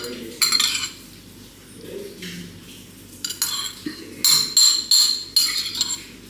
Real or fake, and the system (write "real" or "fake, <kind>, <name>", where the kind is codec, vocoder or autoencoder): real